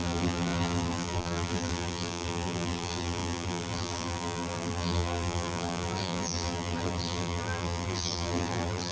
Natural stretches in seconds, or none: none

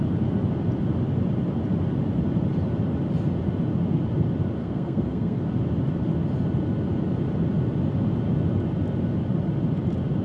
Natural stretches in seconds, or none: 0.0-4.6; 5.4-10.2

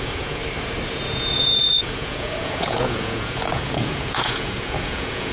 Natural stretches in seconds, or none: 0.4-0.9